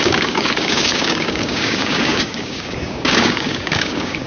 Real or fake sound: fake